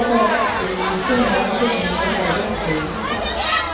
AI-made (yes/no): no